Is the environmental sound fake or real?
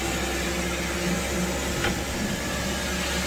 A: real